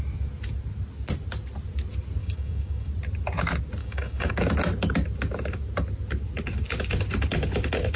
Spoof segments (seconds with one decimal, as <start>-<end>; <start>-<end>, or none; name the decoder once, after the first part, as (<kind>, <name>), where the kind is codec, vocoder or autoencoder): 2.2-2.9 (codec, DAC); 3.8-4.3